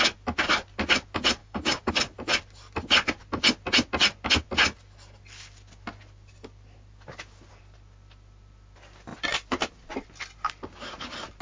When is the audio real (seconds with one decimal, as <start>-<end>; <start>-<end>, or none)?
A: 0.0-1.4; 1.9-11.4